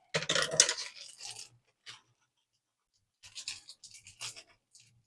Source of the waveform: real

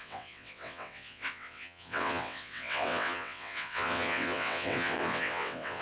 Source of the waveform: fake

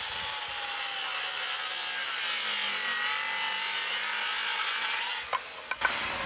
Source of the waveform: real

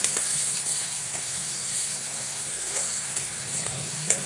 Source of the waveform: fake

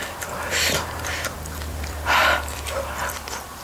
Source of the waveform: fake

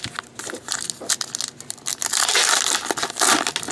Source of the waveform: real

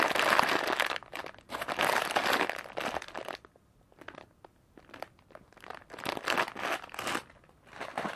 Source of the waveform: real